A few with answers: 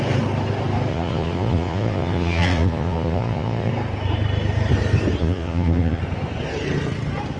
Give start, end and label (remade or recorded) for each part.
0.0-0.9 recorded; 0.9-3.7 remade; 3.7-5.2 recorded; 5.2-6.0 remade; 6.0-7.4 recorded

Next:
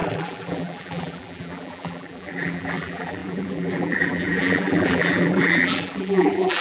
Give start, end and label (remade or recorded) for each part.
0.0-6.6 remade

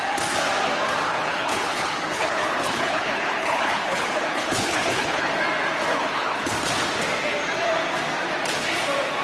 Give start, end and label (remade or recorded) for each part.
0.0-1.1 recorded; 1.1-5.3 remade; 5.3-5.9 recorded; 5.9-6.5 remade; 6.5-9.2 recorded

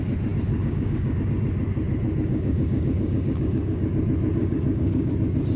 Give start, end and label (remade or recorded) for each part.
0.0-0.5 recorded; 0.5-1.2 remade; 1.2-2.3 recorded; 2.3-3.9 remade; 3.9-4.4 recorded; 4.4-5.1 remade; 5.1-5.6 recorded

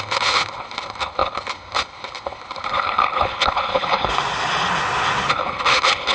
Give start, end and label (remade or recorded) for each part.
0.0-4.1 remade; 4.1-5.3 recorded; 5.3-6.1 remade

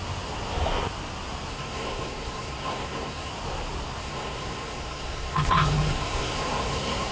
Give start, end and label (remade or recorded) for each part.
0.0-1.5 recorded; 1.5-3.3 remade; 3.3-4.0 recorded; 4.0-7.1 remade

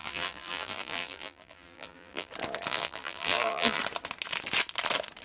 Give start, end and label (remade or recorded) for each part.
0.0-2.3 remade; 2.3-2.7 recorded; 2.7-3.8 remade; 3.8-5.2 recorded

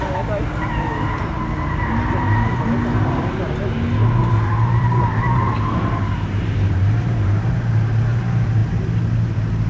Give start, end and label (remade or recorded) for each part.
0.0-4.2 recorded; 4.2-7.5 remade; 7.5-9.7 recorded